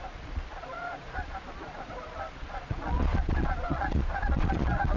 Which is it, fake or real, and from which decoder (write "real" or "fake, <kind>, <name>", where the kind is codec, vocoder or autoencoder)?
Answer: fake, vocoder, Vocos